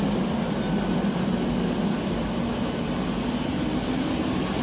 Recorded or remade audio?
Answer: recorded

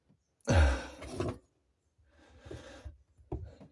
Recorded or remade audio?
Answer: recorded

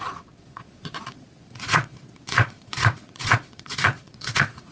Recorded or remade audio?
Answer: remade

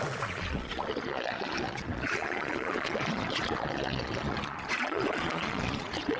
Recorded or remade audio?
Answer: remade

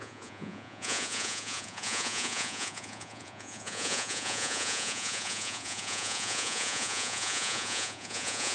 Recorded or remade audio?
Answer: remade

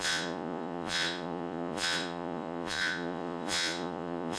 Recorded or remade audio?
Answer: remade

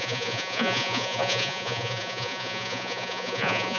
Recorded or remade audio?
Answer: remade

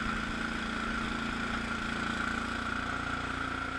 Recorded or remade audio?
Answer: recorded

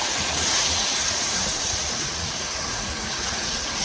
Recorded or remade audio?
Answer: remade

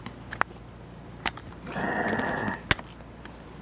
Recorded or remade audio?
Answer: recorded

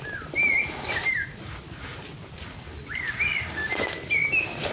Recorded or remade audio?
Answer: recorded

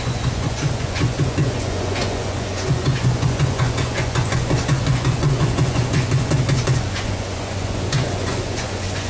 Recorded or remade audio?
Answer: remade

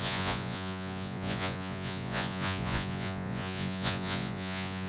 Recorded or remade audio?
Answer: remade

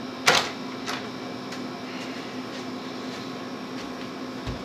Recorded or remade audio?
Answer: recorded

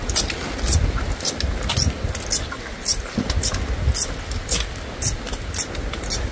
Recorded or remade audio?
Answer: recorded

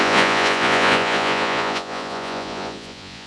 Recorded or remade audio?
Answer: remade